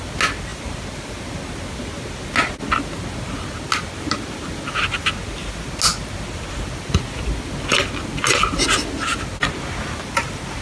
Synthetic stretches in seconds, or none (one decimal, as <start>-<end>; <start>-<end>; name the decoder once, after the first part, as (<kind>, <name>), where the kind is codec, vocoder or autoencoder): none